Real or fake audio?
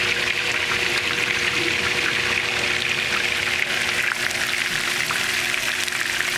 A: real